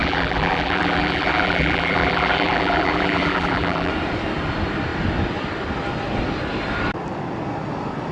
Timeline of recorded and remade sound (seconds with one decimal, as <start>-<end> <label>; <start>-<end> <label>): 0.0-3.9 remade; 3.9-8.1 recorded